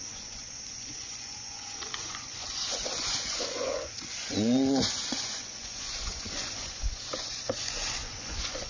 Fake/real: fake